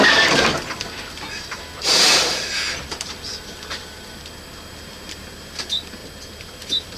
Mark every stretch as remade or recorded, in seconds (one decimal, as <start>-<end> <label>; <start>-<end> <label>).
0.0-6.0 recorded; 6.0-7.0 remade